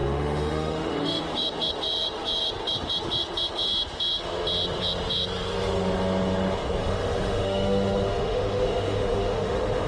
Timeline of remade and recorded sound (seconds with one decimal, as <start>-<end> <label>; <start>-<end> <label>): 0.0-1.2 remade; 1.2-6.8 recorded; 6.8-9.9 remade